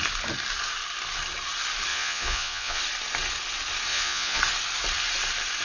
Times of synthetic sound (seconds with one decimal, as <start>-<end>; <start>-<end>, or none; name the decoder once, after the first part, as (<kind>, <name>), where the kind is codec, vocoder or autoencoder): 1.9-2.8 (vocoder, Vocos); 3.9-4.4